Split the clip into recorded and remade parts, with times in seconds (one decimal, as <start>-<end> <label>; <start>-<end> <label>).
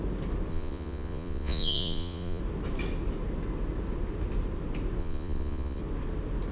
0.0-0.5 recorded; 0.5-2.4 remade; 2.4-5.0 recorded; 5.0-5.8 remade; 5.8-6.5 recorded